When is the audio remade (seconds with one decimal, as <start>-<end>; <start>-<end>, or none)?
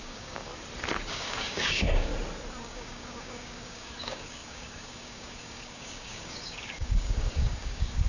0.0-0.5; 1.1-2.1; 2.6-8.1